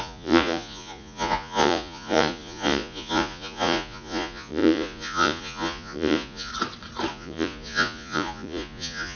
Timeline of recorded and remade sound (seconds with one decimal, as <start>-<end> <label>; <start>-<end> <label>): 0.0-6.5 remade; 6.5-7.1 recorded; 7.1-9.2 remade